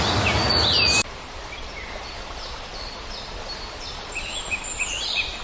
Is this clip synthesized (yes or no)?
no